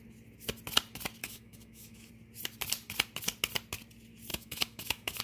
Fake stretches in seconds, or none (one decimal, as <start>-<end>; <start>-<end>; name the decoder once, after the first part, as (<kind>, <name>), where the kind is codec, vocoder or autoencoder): 1.2-2.1 (autoencoder, DAC-VAE); 4.3-5.2